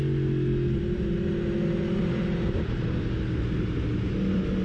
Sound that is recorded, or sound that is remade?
recorded